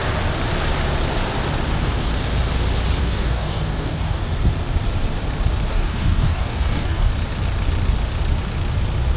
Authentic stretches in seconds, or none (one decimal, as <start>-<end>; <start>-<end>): 0.0-3.0; 4.2-5.7; 7.1-9.2